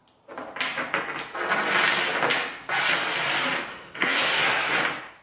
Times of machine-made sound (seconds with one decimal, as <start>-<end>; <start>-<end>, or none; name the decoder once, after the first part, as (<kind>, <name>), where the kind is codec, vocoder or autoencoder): 3.7-4.8 (codec, SNAC)